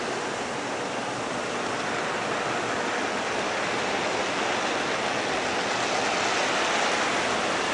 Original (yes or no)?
yes